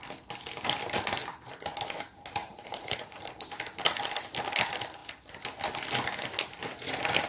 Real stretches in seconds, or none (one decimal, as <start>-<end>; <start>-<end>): 0.0-2.4; 3.2-7.3